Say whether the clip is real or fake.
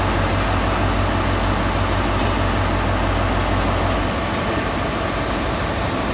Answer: real